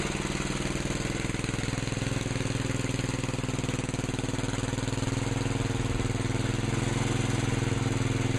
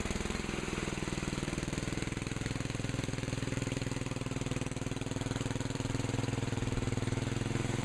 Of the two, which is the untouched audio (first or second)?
first